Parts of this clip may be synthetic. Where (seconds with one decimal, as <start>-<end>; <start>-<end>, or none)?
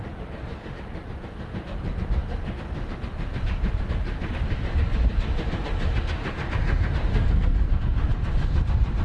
7.1-7.8